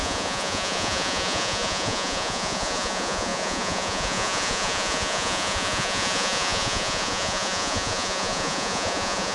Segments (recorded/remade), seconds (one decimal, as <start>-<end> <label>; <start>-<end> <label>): 0.0-9.3 remade